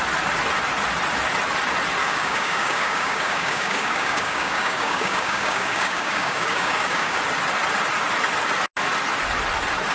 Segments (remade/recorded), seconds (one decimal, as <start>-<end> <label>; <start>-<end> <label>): 0.0-2.0 recorded; 2.0-7.2 remade; 7.2-9.9 recorded